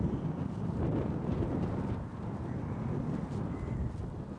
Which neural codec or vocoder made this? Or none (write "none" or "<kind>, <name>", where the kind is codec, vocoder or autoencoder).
none